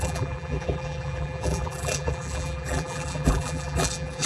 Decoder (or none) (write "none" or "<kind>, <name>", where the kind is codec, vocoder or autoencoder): vocoder, BigVGAN v2